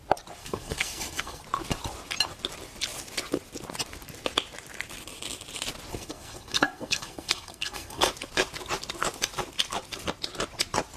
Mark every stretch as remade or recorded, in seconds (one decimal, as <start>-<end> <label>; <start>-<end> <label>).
0.0-0.4 recorded; 0.4-1.4 remade; 1.4-5.9 recorded; 5.9-8.1 remade; 8.1-11.0 recorded